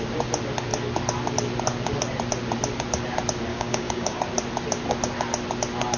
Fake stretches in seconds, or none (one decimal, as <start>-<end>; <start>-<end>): 3.5-4.2